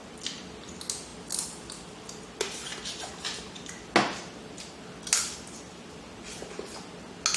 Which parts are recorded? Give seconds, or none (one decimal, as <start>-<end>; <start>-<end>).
0.6-7.4